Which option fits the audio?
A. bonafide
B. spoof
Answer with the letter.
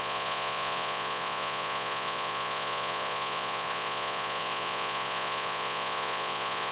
B